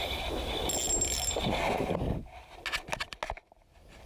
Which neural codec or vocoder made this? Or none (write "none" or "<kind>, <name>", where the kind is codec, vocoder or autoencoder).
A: none